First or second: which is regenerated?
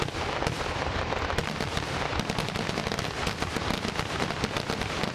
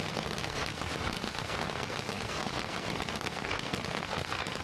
second